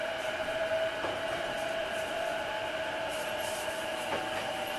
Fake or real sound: fake